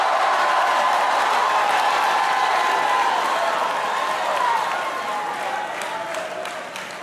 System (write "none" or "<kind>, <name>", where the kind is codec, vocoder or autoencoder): none